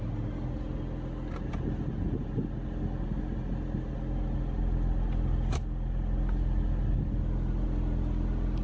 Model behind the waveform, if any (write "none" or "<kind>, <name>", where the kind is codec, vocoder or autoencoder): none